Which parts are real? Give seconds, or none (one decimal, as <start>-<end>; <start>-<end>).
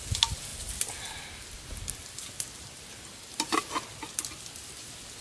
0.0-5.2